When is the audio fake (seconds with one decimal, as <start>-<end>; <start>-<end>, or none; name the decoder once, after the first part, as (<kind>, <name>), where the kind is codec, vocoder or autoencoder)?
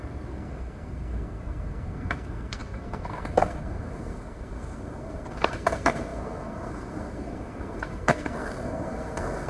0.0-9.5 (codec, SNAC)